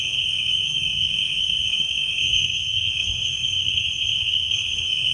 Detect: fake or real fake